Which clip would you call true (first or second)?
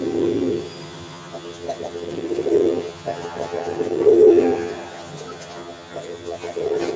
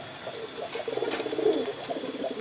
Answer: second